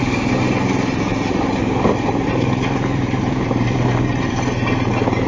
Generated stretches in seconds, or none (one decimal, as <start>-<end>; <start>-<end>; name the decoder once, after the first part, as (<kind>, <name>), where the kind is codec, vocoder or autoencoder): 1.1-4.3 (vocoder, BigVGAN v2)